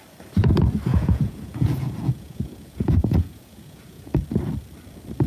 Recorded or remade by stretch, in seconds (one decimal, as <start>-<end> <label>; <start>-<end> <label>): 0.0-0.9 recorded; 0.9-4.1 remade; 4.1-5.3 recorded